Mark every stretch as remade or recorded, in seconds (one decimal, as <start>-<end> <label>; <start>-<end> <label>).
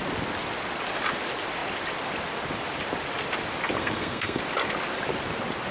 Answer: 0.0-3.8 recorded; 3.8-4.4 remade; 4.4-5.7 recorded